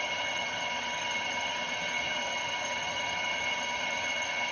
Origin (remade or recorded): remade